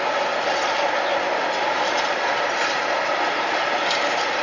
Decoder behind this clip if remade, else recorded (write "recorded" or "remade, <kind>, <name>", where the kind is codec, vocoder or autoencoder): recorded